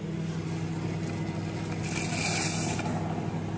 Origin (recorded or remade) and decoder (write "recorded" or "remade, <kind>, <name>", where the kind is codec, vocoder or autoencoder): recorded